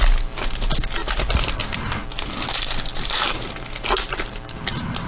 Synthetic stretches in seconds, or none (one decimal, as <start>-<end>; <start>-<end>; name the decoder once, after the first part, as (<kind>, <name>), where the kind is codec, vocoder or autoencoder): none